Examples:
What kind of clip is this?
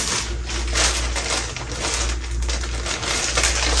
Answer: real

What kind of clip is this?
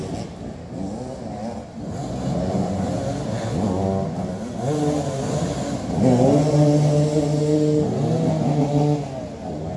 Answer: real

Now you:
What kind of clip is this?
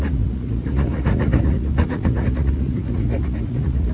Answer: fake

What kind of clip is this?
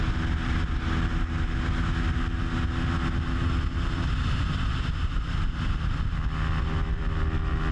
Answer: real